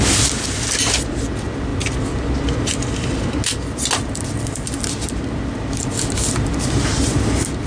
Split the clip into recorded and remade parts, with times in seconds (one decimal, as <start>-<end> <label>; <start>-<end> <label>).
0.0-7.7 recorded